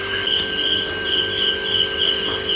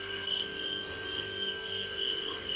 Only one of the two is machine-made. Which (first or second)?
second